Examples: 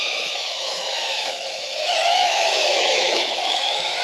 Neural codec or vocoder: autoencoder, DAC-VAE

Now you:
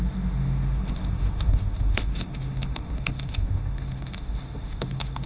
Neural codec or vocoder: autoencoder, DAC-VAE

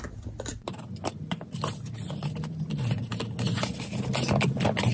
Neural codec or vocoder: none